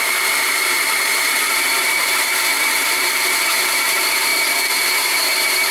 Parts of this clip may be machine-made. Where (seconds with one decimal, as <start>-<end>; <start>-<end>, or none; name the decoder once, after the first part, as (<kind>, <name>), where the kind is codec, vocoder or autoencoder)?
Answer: 0.0-5.7 (vocoder, BigVGAN v2)